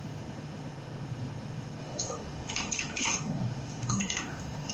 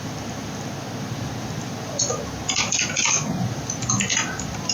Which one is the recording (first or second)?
second